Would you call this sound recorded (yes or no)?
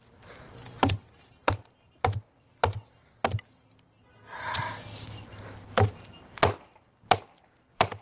yes